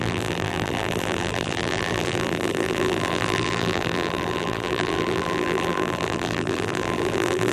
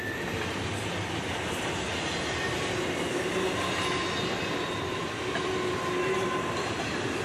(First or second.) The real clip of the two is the second